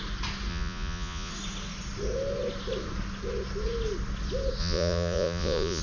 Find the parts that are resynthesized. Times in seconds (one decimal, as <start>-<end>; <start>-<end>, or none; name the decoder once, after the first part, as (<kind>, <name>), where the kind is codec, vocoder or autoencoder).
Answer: 0.5-1.3 (vocoder, Vocos); 4.6-5.8